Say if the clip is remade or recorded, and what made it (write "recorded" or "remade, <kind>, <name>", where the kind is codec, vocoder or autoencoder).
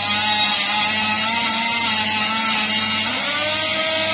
recorded